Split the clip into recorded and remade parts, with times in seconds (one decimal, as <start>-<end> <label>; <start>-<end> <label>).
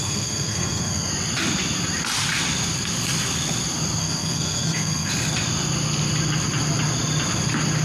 0.0-1.1 remade; 1.1-4.0 recorded; 4.0-5.1 remade; 5.1-7.8 recorded